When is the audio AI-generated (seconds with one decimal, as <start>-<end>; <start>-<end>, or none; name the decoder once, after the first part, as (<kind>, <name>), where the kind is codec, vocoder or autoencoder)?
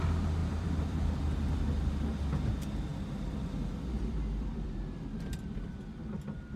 0.4-1.2 (vocoder, BigVGAN v2); 2.9-5.8